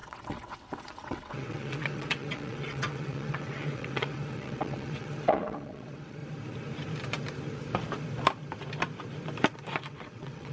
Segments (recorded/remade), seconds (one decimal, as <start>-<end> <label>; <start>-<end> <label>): 0.0-6.2 remade; 6.2-9.8 recorded; 9.8-10.5 remade